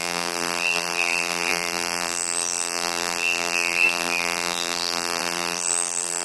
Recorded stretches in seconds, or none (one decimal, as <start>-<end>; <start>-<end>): none